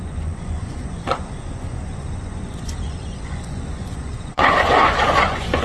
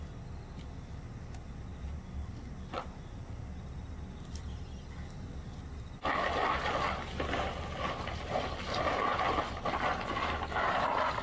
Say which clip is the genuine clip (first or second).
second